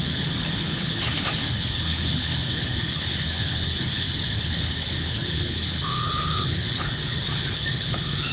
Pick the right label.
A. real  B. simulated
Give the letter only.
B